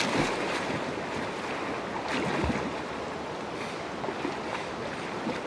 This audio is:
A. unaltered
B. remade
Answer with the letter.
A